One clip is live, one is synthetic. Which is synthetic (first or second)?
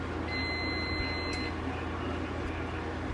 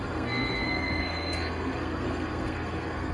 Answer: second